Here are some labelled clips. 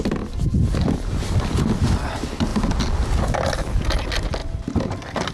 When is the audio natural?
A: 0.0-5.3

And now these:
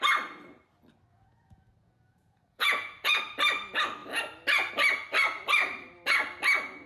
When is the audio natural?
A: 0.0-1.1; 3.2-6.9

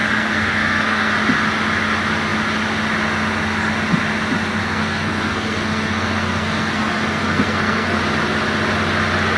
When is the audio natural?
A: 1.1-4.6; 8.0-9.4

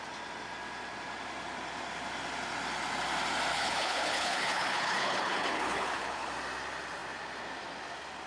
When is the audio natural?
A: 0.0-3.5; 6.3-8.3